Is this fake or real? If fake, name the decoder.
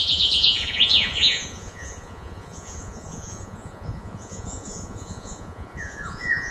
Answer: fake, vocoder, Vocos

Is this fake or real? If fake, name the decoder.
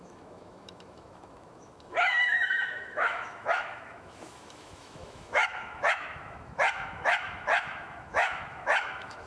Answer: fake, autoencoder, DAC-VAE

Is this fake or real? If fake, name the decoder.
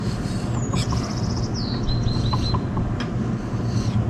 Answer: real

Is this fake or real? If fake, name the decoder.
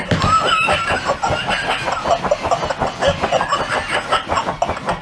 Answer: real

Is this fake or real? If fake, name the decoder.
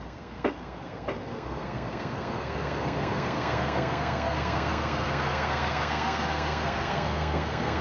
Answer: fake, codec, SNAC